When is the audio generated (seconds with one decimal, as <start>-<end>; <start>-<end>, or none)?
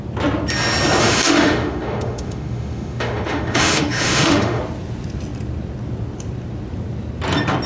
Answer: 1.0-4.6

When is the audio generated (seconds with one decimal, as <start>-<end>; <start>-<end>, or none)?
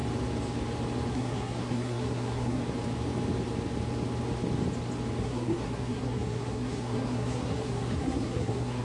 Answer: 1.1-2.6; 5.2-8.8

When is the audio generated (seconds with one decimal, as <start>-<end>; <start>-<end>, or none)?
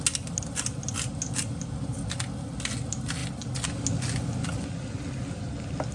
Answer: none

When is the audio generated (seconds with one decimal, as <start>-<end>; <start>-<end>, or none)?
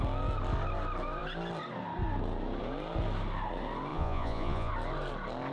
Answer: 3.9-4.7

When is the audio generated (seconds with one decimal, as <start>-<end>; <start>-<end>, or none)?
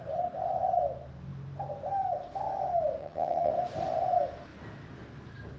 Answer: 3.0-3.5